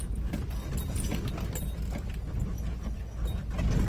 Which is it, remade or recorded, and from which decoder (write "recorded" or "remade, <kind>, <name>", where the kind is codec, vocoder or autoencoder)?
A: recorded